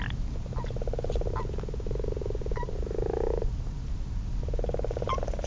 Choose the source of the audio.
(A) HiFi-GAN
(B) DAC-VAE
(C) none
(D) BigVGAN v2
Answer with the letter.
C